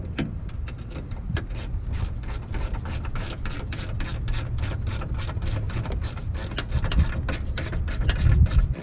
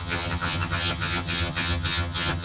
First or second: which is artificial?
second